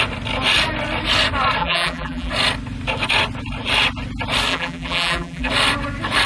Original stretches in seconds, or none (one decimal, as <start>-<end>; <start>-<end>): 0.0-1.6; 2.3-4.5; 5.5-6.3